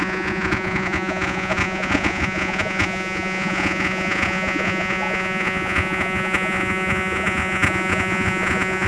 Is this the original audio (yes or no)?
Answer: no